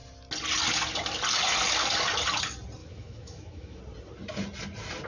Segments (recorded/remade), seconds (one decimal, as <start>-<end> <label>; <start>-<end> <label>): 0.0-2.8 recorded; 2.8-3.8 remade; 3.8-5.1 recorded

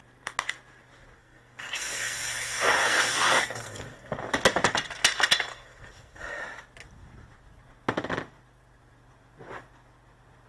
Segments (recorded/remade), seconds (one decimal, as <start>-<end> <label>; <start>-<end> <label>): 0.0-1.2 recorded; 1.2-4.2 remade; 4.2-5.5 recorded; 5.5-6.4 remade; 6.4-10.5 recorded

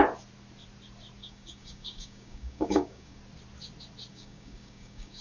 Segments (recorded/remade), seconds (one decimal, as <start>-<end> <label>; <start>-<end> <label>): 0.0-1.2 recorded; 1.2-3.2 remade; 3.2-4.1 recorded; 4.1-5.2 remade

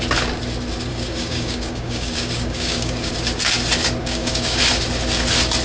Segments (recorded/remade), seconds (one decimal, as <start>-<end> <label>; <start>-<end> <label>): 0.0-0.9 recorded; 0.9-3.1 remade; 3.1-4.0 recorded; 4.0-4.6 remade; 4.6-5.6 recorded